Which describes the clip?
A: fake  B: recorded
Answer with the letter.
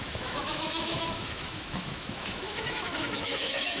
A